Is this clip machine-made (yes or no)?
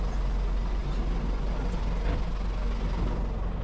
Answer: no